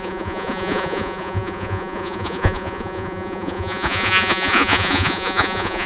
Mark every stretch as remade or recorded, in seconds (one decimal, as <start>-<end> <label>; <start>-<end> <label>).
0.0-5.9 remade